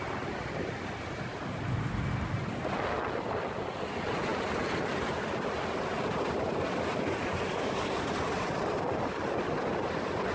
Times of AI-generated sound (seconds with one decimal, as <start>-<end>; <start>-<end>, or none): none